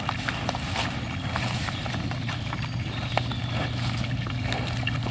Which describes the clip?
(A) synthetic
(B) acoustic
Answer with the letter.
B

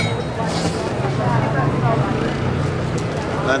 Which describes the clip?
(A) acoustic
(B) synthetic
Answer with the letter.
A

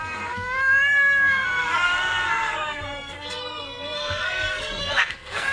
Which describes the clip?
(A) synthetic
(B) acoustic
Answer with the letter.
A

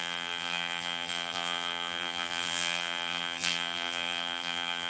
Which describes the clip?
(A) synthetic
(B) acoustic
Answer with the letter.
A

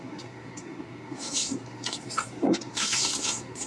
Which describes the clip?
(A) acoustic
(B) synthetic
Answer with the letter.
B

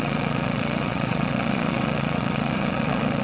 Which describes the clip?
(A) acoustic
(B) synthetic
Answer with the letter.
B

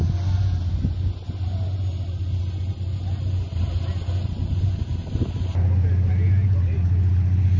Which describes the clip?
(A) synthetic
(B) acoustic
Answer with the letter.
B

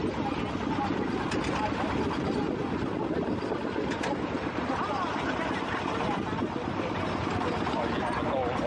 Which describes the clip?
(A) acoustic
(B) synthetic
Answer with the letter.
A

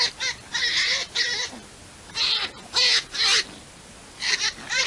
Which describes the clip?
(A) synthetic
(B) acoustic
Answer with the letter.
B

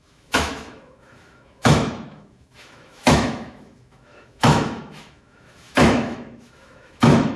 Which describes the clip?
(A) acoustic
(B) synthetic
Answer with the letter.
B